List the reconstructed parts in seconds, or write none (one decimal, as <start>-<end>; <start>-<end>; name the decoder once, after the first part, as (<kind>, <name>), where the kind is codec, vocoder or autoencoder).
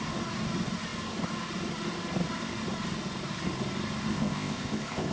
4.1-5.1 (codec, ZipCodec)